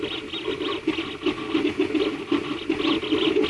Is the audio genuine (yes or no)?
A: yes